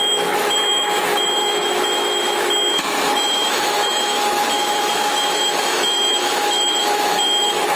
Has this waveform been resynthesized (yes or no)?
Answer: yes